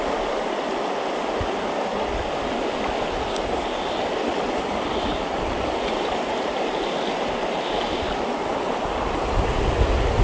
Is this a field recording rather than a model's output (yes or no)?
yes